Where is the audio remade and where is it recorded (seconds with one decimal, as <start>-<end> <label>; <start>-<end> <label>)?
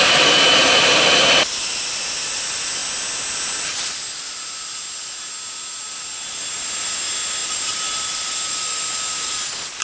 0.0-2.8 remade; 2.8-5.9 recorded; 5.9-9.8 remade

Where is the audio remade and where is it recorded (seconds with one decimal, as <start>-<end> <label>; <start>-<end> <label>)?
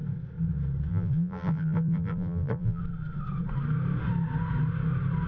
0.0-0.9 recorded; 0.9-2.8 remade; 2.8-5.3 recorded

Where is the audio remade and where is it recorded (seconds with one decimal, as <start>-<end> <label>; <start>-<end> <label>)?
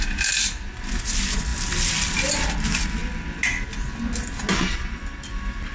0.0-5.7 recorded